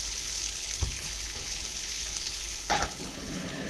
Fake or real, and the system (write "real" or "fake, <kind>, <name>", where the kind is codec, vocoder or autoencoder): fake, codec, HILCodec